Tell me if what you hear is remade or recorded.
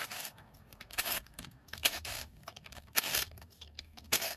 remade